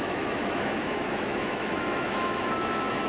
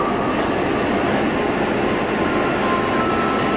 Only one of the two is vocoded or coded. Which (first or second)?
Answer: first